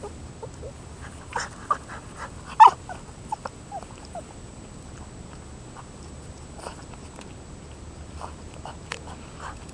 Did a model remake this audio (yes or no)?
no